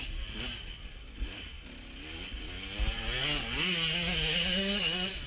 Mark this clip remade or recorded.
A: recorded